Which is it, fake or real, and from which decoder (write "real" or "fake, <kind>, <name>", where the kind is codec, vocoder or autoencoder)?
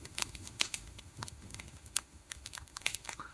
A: fake, autoencoder, DAC-VAE